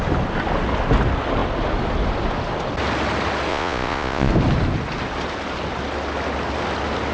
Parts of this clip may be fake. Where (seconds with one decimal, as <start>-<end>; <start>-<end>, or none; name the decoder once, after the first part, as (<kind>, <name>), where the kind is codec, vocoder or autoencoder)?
3.5-4.3 (vocoder, Vocos)